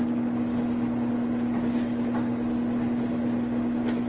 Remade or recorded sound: recorded